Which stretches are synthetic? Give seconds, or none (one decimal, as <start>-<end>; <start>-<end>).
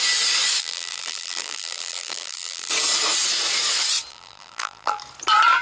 0.6-2.7; 4.1-5.0